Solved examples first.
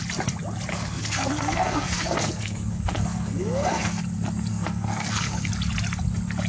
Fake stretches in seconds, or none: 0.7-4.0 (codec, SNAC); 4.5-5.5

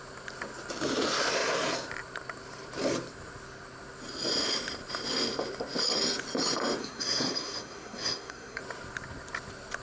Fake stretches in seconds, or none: 6.8-8.6 (codec, SNAC)

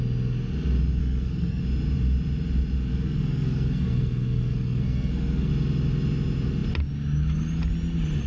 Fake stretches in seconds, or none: 1.0-1.6 (codec, SNAC); 2.9-5.5

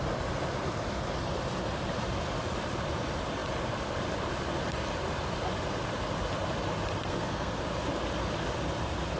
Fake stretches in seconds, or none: 7.0-7.6 (codec, SNAC)